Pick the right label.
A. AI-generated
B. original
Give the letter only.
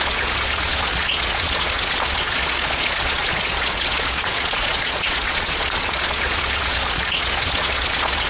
A